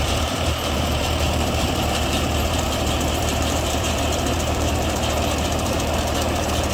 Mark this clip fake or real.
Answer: fake